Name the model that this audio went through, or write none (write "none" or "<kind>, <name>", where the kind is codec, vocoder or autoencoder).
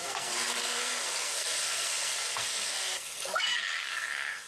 codec, SNAC